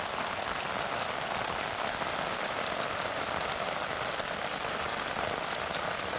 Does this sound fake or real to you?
real